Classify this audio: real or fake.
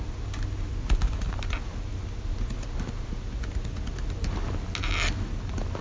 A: real